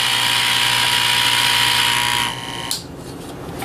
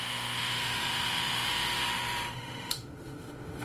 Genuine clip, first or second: first